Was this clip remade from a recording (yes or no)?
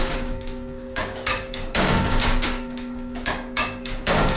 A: yes